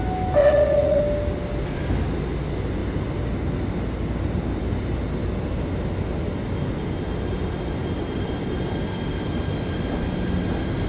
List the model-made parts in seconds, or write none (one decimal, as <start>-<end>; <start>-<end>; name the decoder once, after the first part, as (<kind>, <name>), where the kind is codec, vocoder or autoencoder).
0.4-1.0 (vocoder, Vocos)